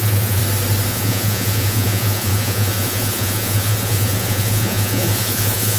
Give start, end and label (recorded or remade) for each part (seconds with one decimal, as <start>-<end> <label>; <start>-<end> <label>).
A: 0.0-0.4 remade; 0.4-0.9 recorded; 0.9-5.8 remade